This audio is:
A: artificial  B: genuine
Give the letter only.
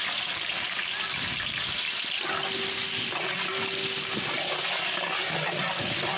B